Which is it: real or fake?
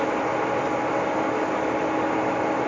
real